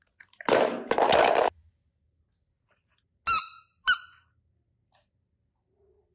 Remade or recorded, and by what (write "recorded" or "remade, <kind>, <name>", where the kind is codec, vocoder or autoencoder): recorded